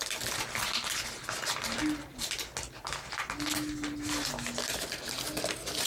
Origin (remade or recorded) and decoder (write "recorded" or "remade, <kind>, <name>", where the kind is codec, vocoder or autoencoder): recorded